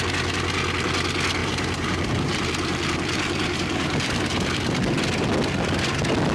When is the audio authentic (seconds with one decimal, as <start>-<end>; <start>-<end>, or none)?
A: 0.0-1.4; 4.8-6.3

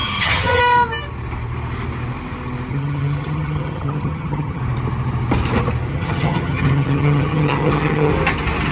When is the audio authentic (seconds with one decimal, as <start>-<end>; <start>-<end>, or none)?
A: 0.6-2.7; 4.6-5.9; 8.1-8.7

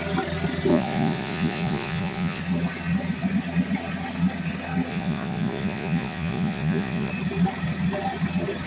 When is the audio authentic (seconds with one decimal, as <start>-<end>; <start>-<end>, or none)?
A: 0.0-0.7; 2.4-4.9; 7.1-8.7

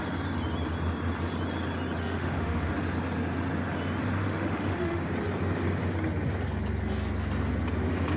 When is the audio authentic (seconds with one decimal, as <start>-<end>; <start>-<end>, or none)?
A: 0.0-2.0; 2.7-4.2; 5.0-8.2

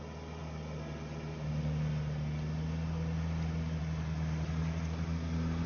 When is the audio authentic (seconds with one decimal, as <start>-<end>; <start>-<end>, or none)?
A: 0.0-5.7

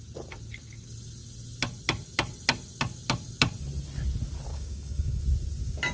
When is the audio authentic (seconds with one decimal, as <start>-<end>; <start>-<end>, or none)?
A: 0.0-4.5; 5.2-5.9

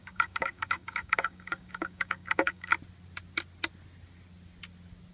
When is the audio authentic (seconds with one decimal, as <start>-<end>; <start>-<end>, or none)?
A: 2.7-5.1